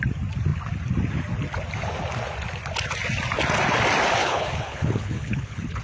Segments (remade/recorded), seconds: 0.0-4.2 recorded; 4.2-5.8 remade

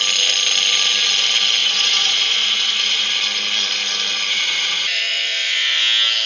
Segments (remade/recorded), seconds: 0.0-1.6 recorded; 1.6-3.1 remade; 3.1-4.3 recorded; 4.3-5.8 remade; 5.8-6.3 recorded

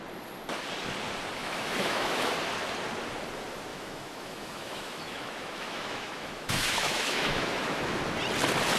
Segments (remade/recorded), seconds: 0.0-1.4 recorded; 1.4-2.3 remade; 2.3-3.7 recorded; 3.7-8.0 remade; 8.0-8.8 recorded

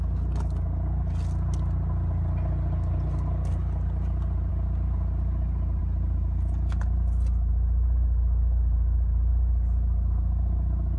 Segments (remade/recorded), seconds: 0.0-11.0 recorded